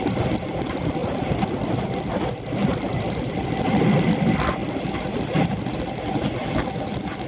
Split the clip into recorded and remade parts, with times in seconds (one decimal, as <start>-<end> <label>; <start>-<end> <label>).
0.0-7.3 recorded